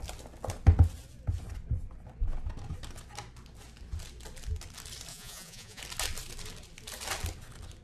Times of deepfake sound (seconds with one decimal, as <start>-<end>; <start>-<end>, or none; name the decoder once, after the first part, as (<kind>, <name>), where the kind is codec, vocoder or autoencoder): 5.1-5.8 (vocoder, Vocos)